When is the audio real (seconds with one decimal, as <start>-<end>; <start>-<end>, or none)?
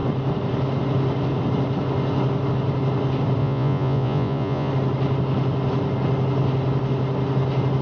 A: 0.0-3.4; 4.7-7.8